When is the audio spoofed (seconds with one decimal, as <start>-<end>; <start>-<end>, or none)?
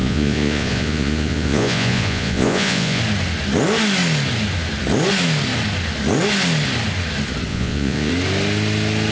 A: 0.0-3.0; 7.5-8.1